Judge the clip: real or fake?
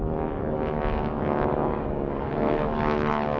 fake